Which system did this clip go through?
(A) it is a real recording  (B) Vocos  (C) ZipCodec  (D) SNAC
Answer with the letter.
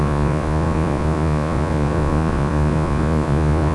B